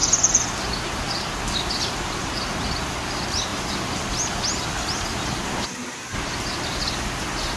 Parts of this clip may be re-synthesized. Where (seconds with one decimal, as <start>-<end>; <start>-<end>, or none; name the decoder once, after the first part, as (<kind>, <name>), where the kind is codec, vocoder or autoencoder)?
none